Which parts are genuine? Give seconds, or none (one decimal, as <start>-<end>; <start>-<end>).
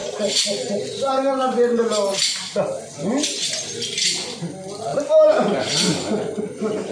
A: 1.1-6.9